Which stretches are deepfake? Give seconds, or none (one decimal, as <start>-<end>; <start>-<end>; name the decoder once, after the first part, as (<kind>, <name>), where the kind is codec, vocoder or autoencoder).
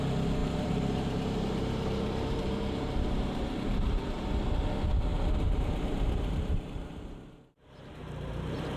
0.4-4.2 (vocoder, BigVGAN v2); 5.1-8.3